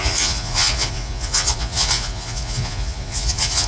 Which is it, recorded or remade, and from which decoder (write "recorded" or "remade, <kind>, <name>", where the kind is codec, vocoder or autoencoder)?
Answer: remade, vocoder, Vocos